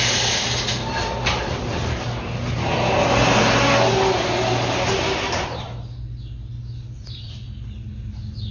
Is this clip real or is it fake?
real